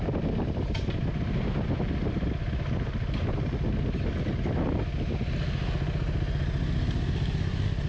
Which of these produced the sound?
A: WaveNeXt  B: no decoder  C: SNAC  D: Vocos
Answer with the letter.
B